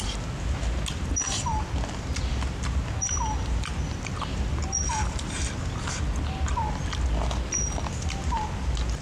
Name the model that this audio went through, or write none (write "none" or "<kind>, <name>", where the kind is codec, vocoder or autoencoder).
none